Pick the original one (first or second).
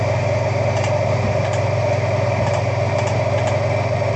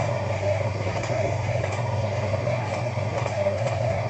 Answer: first